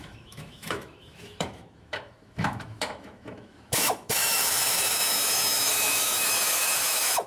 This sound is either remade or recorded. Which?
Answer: remade